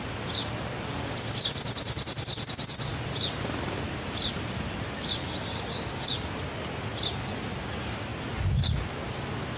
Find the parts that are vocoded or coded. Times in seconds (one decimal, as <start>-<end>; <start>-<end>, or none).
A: none